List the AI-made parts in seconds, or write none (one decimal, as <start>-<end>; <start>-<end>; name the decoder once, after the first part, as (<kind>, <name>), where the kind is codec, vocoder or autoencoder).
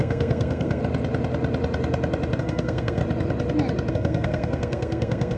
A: 0.0-0.8 (codec, SNAC); 2.4-3.0; 3.9-5.4